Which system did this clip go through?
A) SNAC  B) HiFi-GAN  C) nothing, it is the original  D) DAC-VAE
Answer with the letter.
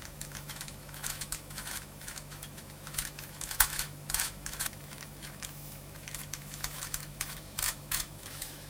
D